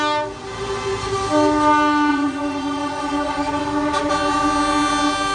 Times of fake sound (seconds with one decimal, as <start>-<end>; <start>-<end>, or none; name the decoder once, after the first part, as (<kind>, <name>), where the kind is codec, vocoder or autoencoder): 2.1-3.6 (vocoder, Vocos)